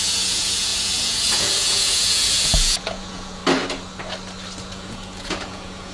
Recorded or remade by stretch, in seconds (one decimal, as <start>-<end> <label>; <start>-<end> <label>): 0.0-3.4 remade; 3.4-4.6 recorded; 4.6-5.9 remade